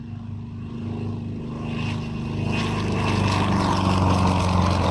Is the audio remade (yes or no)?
no